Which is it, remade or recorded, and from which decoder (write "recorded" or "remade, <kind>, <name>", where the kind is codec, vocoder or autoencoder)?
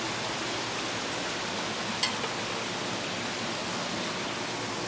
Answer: recorded